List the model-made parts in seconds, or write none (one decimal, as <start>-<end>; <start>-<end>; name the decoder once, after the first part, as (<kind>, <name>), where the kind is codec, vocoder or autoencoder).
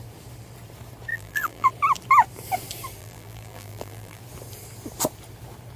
1.1-1.7 (vocoder, BigVGAN v2); 3.0-4.2